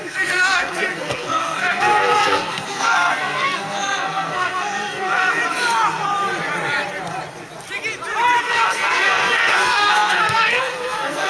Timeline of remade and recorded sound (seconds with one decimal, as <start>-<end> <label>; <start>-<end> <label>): 0.0-5.4 remade; 5.4-8.4 recorded; 8.4-11.3 remade

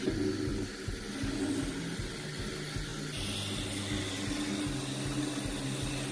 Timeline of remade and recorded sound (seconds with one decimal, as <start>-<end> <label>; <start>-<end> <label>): 0.0-6.1 recorded

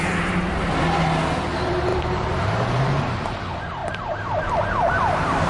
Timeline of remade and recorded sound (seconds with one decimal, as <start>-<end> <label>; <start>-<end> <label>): 0.0-1.9 recorded; 1.9-3.4 remade; 3.4-3.8 recorded; 3.8-4.4 remade; 4.4-5.5 recorded